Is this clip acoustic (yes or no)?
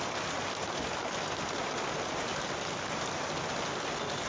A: yes